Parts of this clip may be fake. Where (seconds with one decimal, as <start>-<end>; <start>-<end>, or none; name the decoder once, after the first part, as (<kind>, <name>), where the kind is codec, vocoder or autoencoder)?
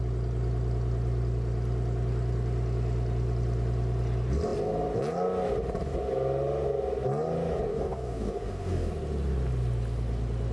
7.7-8.9 (codec, DAC)